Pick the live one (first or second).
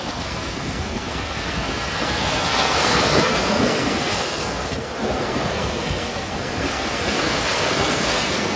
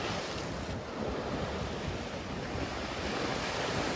second